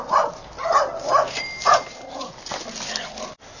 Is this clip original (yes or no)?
yes